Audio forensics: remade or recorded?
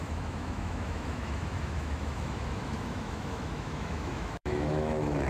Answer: remade